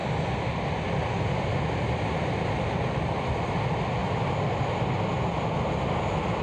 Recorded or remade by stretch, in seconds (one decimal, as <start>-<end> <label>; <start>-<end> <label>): 0.0-6.4 recorded